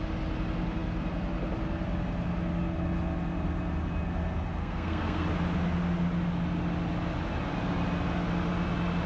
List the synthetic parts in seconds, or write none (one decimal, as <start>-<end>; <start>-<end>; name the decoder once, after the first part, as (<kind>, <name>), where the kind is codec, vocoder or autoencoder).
4.6-5.3 (codec, SNAC)

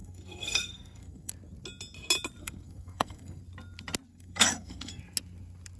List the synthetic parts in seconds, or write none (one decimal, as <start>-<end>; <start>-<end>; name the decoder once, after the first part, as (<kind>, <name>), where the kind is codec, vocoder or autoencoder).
0.0-1.3 (codec, SNAC); 2.4-3.4; 4.1-5.0